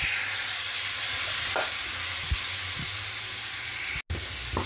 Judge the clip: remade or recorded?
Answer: recorded